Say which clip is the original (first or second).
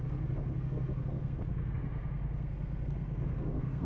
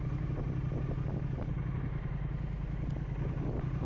second